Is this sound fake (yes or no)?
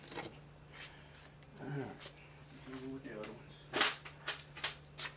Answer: no